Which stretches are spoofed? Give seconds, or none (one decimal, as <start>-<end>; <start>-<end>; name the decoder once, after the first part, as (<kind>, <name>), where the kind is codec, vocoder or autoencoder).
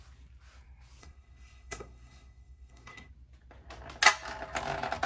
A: 1.0-3.1 (codec, SNAC)